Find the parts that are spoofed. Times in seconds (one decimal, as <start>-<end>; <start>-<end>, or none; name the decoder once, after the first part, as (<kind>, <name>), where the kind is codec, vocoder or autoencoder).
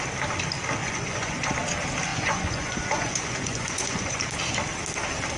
0.8-1.5 (vocoder, Vocos); 2.1-4.2